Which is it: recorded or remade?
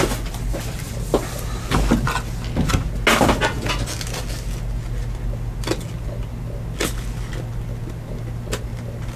recorded